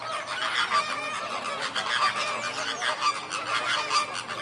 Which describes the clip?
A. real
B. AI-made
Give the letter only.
A